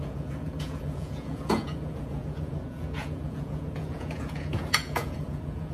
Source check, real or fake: fake